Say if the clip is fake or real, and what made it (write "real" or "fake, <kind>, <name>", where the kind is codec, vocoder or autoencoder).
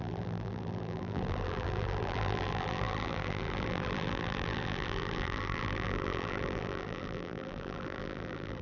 fake, vocoder, BigVGAN v2